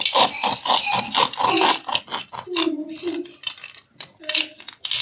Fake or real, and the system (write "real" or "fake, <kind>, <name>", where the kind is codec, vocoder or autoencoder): real